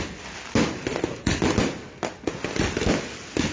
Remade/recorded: recorded